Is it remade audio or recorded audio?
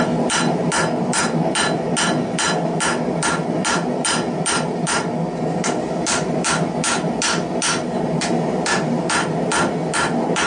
recorded